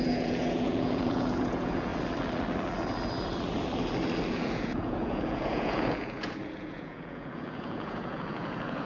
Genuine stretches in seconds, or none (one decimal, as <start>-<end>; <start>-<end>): 1.9-4.3